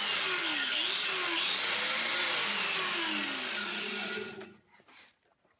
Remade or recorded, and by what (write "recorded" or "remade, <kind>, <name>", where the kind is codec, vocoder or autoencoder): recorded